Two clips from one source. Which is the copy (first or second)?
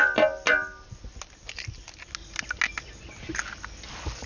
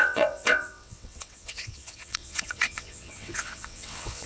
second